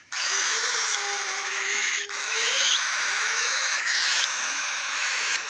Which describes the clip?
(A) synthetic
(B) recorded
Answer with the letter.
A